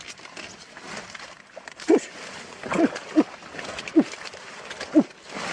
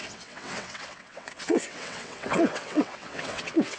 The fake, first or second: second